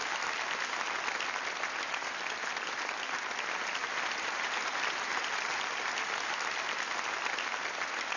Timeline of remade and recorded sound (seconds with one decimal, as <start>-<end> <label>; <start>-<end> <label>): 0.0-8.2 recorded